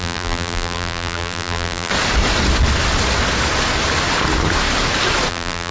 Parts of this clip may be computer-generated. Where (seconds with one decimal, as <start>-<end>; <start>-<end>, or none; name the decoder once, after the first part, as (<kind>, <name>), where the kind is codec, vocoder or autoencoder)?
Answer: 0.0-1.9 (vocoder, BigVGAN v2); 5.3-5.7